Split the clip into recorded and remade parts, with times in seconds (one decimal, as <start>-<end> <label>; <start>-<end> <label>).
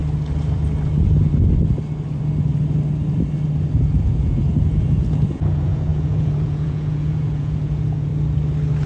0.0-3.8 recorded; 3.8-8.1 remade; 8.1-8.9 recorded